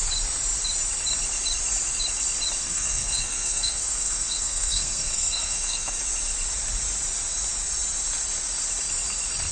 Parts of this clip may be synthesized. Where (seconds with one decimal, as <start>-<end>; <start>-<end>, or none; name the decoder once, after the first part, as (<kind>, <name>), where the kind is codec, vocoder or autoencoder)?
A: 2.6-6.0 (codec, SNAC)